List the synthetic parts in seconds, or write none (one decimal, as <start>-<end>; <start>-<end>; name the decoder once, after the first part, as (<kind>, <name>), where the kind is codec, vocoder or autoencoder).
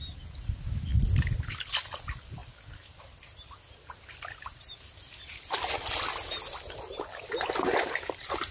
none